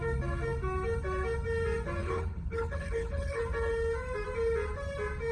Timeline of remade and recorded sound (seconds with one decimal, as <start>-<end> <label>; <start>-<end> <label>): 0.0-2.0 recorded; 2.0-3.4 remade; 3.4-5.3 recorded